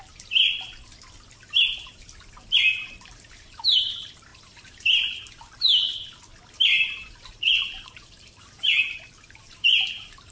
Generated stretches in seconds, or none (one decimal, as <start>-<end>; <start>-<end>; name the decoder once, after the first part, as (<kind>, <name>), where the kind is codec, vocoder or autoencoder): 3.0-6.3 (vocoder, BigVGAN v2); 6.9-8.7; 9.4-10.3

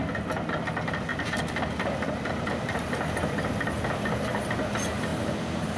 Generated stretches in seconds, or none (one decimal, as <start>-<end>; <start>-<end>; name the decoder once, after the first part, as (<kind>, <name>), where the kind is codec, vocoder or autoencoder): 1.1-2.4 (vocoder, BigVGAN v2); 5.1-5.8

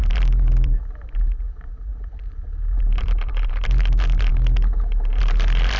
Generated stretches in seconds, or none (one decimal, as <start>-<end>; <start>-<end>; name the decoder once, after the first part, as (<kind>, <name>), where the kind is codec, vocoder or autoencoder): 0.0-5.8 (vocoder, BigVGAN v2)

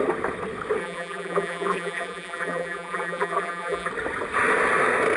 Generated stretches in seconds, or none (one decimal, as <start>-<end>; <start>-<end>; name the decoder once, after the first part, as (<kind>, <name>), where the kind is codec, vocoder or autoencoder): 0.8-3.9 (vocoder, BigVGAN v2)

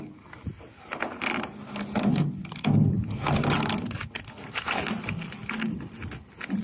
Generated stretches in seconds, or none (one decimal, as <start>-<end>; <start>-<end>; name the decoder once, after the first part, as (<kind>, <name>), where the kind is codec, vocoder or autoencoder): 2.4-3.0 (vocoder, BigVGAN v2)

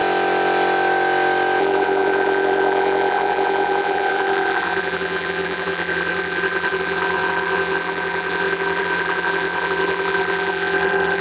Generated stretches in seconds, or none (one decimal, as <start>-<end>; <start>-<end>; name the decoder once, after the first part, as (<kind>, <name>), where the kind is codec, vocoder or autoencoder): 1.6-11.2 (vocoder, BigVGAN v2)

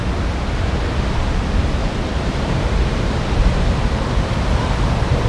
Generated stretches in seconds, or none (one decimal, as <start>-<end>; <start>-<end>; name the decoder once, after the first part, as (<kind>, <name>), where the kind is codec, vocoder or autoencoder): 1.8-5.3 (vocoder, BigVGAN v2)

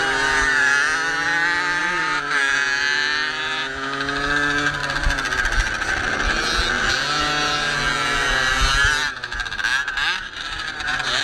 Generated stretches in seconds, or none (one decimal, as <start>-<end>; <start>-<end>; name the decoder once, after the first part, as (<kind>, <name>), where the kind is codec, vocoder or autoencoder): 1.8-2.4 (vocoder, BigVGAN v2)